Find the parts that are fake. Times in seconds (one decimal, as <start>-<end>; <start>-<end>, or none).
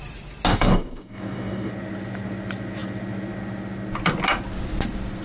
0.5-1.7